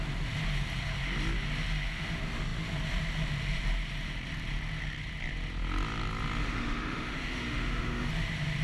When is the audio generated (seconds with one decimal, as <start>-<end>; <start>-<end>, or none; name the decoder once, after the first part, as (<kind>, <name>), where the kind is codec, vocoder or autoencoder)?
6.4-8.1 (autoencoder, DAC-VAE)